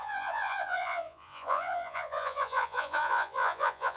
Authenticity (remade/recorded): remade